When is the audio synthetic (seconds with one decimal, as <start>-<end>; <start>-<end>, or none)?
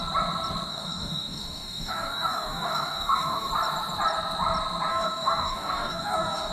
0.7-3.5; 4.9-6.5